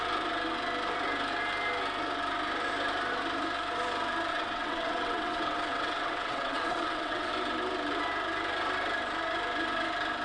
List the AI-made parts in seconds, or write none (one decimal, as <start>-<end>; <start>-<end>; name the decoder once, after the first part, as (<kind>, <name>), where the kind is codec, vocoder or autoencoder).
4.3-7.3 (vocoder, WaveNeXt)